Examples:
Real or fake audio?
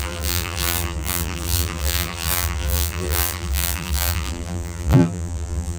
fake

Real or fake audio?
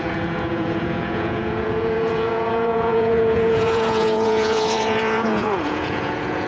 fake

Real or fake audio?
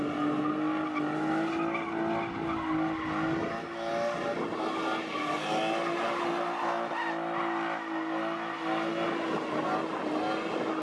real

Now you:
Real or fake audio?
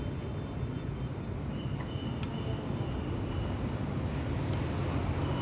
real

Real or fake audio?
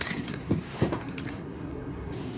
fake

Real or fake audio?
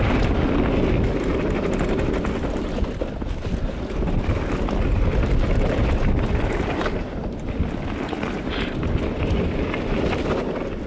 real